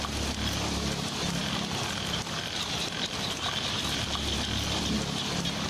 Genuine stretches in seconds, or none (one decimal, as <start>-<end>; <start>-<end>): 0.0-5.7